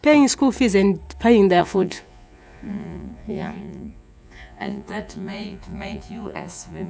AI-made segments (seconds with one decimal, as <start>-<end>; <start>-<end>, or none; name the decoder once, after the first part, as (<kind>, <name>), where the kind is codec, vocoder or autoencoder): 1.6-6.9 (vocoder, Vocos)